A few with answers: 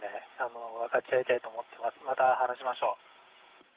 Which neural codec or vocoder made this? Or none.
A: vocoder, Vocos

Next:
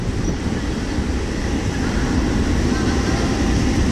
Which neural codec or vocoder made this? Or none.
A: none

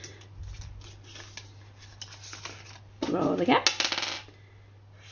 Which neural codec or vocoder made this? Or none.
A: none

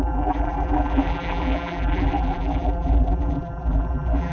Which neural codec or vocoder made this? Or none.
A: vocoder, BigVGAN v2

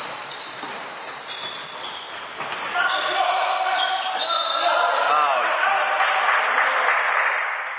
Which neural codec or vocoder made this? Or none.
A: vocoder, BigVGAN v2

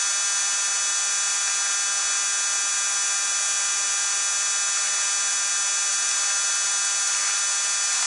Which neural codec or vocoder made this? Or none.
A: none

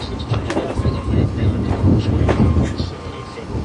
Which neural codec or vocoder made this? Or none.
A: none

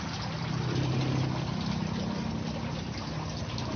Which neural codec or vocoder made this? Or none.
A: none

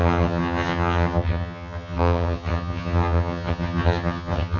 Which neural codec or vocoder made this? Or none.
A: vocoder, HiFi-GAN